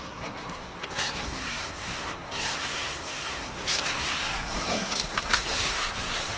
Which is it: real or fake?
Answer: fake